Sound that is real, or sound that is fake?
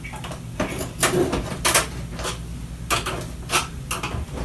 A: real